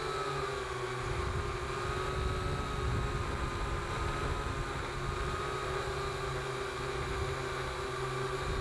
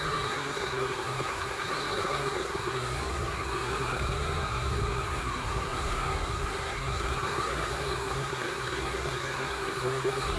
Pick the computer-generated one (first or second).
second